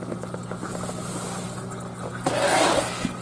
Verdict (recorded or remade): recorded